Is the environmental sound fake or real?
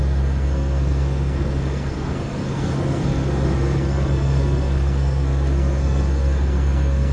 fake